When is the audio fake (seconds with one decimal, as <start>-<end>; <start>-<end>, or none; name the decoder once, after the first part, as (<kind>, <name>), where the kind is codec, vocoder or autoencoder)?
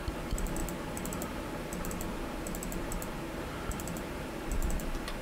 0.0-0.6 (vocoder, BigVGAN v2); 3.1-5.2